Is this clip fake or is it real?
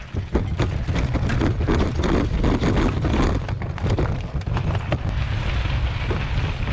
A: real